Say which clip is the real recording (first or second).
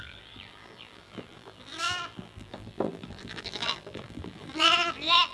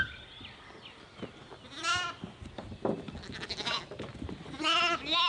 second